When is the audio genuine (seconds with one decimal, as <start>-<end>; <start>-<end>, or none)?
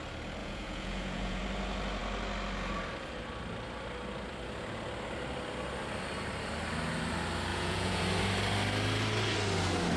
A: 0.0-0.4; 1.4-7.5; 8.0-10.0